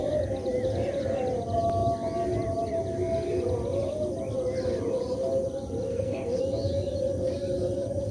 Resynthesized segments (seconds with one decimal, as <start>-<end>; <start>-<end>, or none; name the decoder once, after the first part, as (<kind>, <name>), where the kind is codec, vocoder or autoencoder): 5.9-6.4 (codec, SNAC)